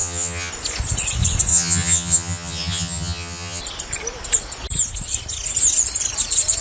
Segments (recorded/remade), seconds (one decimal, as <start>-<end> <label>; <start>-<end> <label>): 0.0-0.5 remade; 0.5-1.5 recorded; 1.5-3.6 remade; 3.6-6.6 recorded